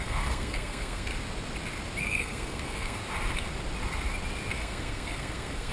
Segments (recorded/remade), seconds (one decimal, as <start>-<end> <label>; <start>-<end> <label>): 0.0-1.1 remade; 1.1-2.0 recorded; 2.0-3.0 remade; 3.0-4.5 recorded; 4.5-5.7 remade